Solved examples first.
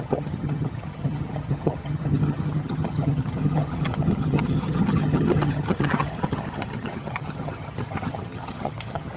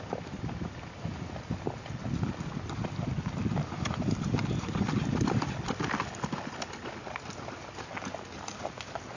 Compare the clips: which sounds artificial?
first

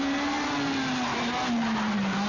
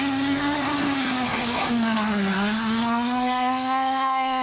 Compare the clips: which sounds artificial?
second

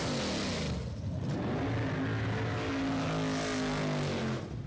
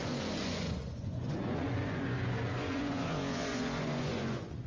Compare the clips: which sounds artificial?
second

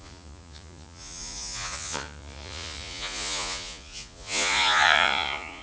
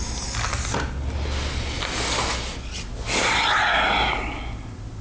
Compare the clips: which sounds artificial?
first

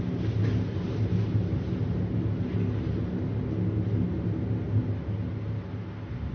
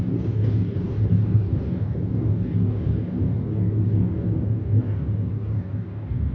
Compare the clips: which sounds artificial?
second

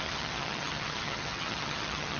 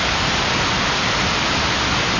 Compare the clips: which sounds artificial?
first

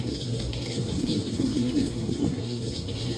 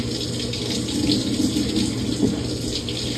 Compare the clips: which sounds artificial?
first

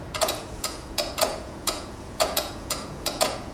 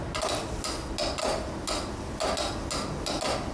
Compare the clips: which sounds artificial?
first